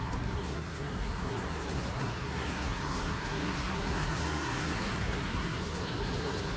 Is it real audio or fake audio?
fake